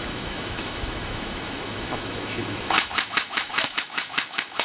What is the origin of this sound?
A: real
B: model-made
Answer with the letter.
B